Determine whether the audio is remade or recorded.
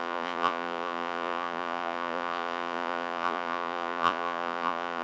remade